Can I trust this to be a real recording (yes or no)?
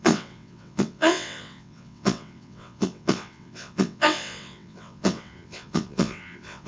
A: no